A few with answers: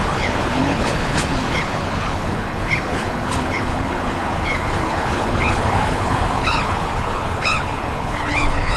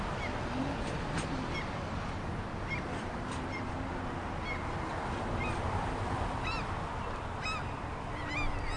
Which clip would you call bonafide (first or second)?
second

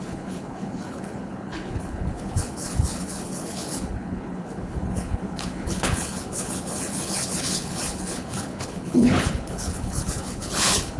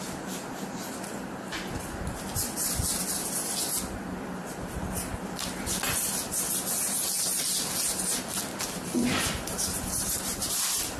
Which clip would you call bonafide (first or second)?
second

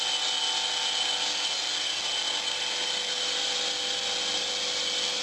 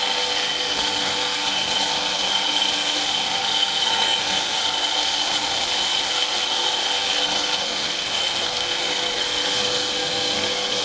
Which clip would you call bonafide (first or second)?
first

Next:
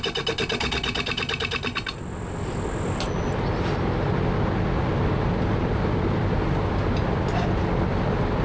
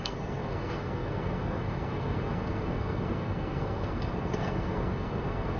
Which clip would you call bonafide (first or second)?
first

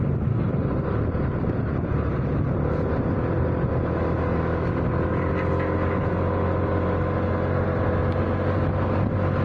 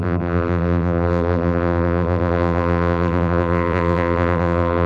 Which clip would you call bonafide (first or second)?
first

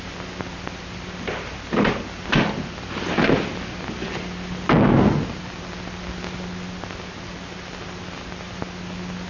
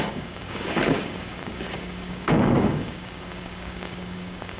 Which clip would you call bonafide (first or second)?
first